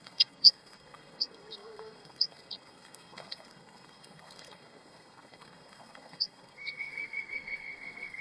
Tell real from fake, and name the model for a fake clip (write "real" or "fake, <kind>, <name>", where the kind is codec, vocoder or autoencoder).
fake, codec, SNAC